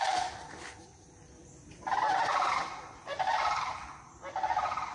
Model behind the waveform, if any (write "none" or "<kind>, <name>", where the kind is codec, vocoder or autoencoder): none